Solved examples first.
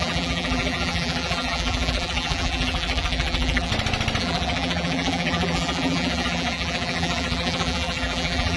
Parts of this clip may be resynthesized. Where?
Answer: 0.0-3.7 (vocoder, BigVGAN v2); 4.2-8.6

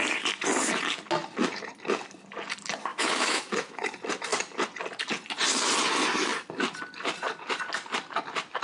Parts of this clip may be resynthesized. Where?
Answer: 2.9-3.9 (autoencoder, DAC-VAE)